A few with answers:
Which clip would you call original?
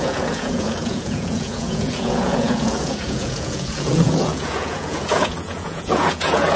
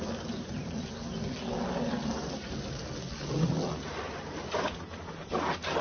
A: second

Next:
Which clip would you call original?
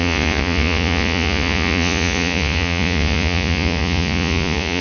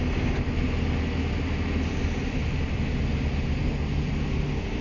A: second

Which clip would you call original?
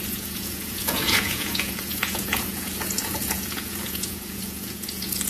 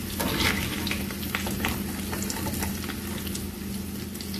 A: second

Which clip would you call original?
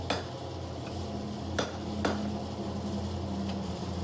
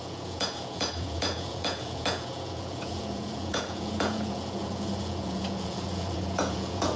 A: first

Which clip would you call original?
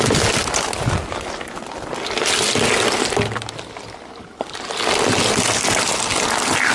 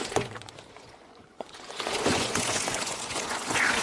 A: first